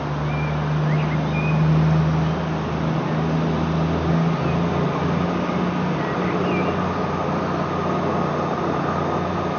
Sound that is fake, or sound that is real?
real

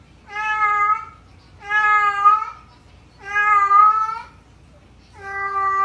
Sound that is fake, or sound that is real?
real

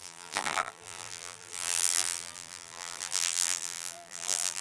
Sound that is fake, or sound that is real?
fake